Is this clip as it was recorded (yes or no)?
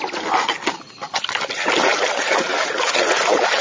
yes